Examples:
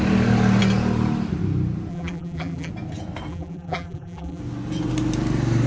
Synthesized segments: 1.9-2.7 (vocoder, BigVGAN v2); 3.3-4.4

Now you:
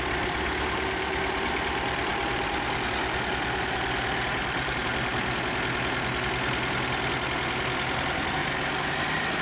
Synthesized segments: 2.1-4.9 (vocoder, BigVGAN v2)

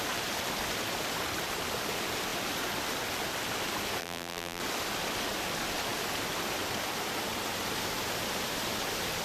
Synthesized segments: 4.0-4.6 (vocoder, BigVGAN v2)

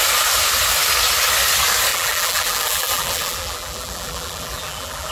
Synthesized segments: 1.9-5.1 (vocoder, BigVGAN v2)